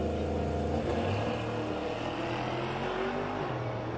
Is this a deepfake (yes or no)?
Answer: no